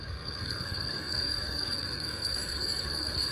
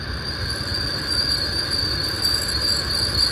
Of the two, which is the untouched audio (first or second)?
second